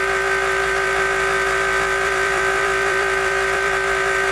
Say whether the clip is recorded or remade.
remade